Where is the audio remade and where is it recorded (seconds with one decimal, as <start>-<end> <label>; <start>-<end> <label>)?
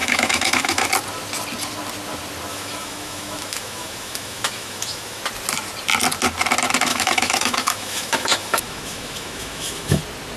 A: 0.0-0.9 remade; 0.9-2.5 recorded; 2.5-5.2 remade; 5.2-6.9 recorded; 6.9-10.0 remade; 10.0-10.4 recorded